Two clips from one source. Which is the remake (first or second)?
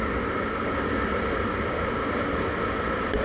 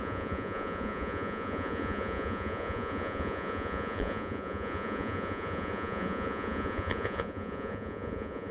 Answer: second